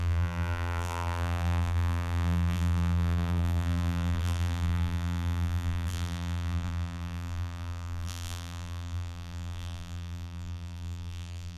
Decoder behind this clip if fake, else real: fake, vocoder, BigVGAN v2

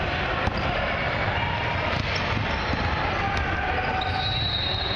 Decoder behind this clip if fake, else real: fake, vocoder, BigVGAN v2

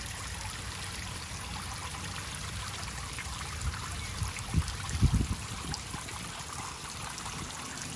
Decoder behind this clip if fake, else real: real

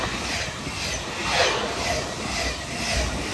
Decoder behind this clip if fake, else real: real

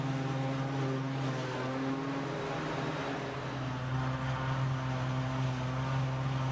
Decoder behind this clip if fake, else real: real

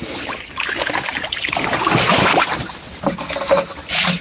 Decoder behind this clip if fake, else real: real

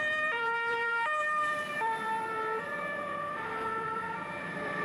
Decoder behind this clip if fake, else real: fake, vocoder, BigVGAN v2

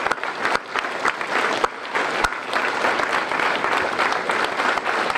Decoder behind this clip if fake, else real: real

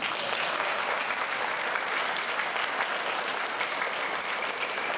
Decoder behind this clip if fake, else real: real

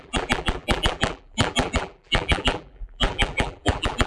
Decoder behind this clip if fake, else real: fake, vocoder, BigVGAN v2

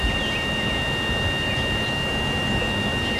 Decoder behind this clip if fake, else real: real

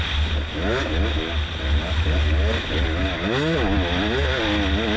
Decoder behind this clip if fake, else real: real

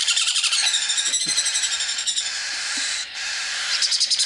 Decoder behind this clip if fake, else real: fake, vocoder, BigVGAN v2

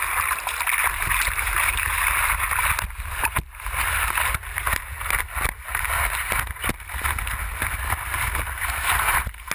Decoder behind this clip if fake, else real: real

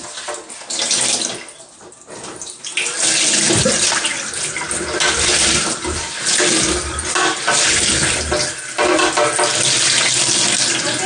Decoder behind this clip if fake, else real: real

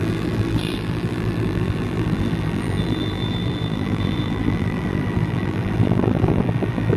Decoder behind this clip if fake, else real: fake, vocoder, BigVGAN v2